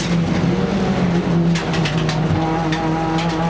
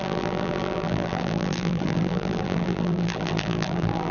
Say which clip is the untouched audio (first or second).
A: first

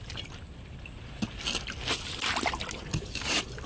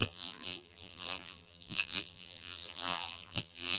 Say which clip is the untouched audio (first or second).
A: first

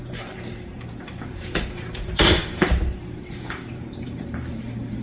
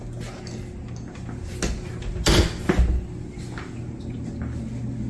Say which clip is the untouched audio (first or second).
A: second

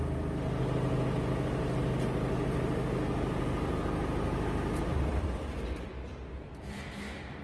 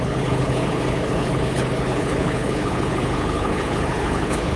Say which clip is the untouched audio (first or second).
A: first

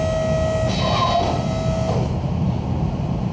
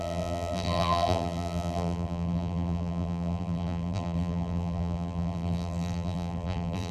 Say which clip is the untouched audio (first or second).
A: first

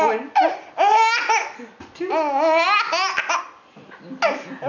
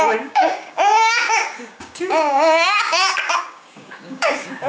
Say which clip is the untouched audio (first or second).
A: first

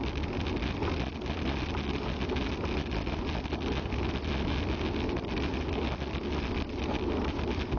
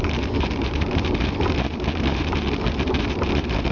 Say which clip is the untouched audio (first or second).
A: first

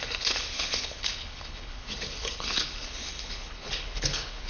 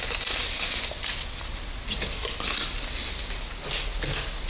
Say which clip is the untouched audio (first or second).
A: second